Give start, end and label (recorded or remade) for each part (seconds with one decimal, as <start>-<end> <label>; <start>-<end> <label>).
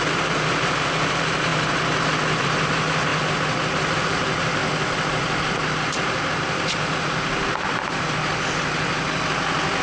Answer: 0.0-1.5 remade; 1.5-2.4 recorded; 2.4-3.1 remade; 3.1-4.0 recorded; 4.0-4.6 remade; 4.6-9.8 recorded